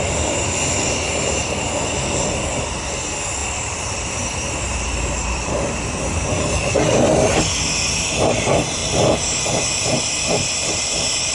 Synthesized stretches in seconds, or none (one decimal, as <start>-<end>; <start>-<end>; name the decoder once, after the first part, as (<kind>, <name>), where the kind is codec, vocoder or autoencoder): 1.4-2.7 (vocoder, BigVGAN v2); 3.4-7.4